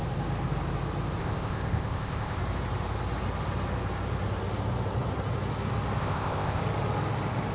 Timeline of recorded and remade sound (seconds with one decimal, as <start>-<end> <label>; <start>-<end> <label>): 0.0-1.2 recorded; 1.2-2.4 remade; 2.4-6.0 recorded; 6.0-6.6 remade; 6.6-7.5 recorded